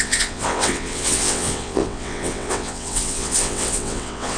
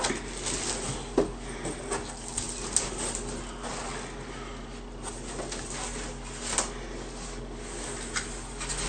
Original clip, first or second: second